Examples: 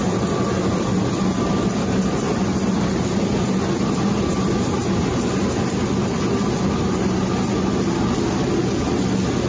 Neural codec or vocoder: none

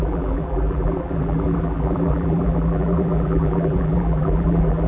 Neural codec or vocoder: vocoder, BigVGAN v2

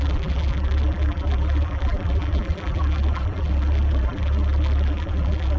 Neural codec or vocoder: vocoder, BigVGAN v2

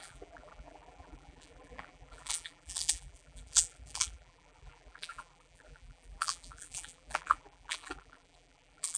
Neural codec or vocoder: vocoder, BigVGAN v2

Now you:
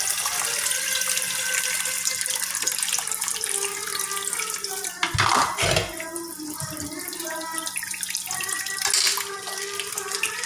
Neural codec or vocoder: none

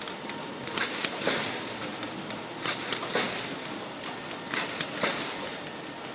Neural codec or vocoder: none